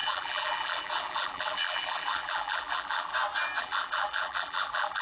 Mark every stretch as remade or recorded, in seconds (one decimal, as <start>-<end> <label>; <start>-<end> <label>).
0.0-3.1 remade; 3.1-3.6 recorded; 3.6-5.0 remade